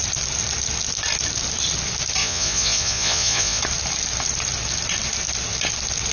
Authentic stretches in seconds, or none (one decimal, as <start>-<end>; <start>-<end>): 0.0-2.2; 3.6-6.1